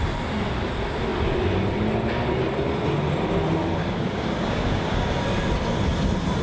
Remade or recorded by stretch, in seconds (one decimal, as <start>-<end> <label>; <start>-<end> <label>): 0.0-3.8 recorded; 3.8-5.1 remade; 5.1-6.4 recorded